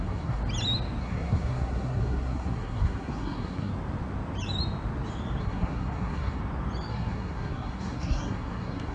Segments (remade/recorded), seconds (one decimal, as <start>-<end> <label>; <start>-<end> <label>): 0.0-0.4 remade; 0.4-1.0 recorded; 1.0-3.7 remade; 3.7-5.4 recorded; 5.4-6.4 remade; 6.4-6.9 recorded; 6.9-8.9 remade